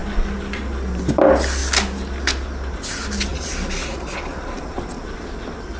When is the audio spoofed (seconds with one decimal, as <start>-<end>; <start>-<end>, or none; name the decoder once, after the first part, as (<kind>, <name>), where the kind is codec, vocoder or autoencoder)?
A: 3.3-5.0 (vocoder, Vocos)

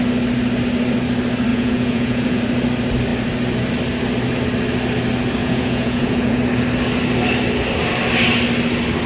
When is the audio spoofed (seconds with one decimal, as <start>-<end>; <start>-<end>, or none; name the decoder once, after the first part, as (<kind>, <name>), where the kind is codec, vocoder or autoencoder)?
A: 1.5-2.4 (vocoder, Vocos); 5.4-6.4

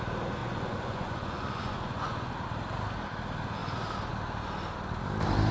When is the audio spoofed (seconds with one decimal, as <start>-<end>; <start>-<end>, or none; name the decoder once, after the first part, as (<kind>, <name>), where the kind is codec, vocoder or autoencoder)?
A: 0.4-2.3 (vocoder, Vocos)

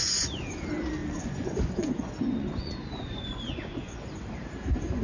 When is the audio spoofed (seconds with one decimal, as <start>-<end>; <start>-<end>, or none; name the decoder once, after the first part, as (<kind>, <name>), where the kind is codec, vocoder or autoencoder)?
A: 0.0-0.6 (vocoder, Vocos); 1.0-4.0

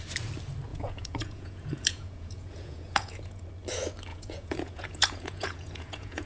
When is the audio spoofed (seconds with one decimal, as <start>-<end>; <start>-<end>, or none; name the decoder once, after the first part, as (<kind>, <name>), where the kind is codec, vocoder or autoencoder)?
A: 0.7-3.4 (vocoder, Vocos); 4.1-6.3